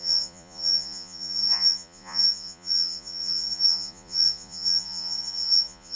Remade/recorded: remade